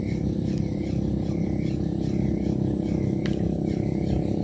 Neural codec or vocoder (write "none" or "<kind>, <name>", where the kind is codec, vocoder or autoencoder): none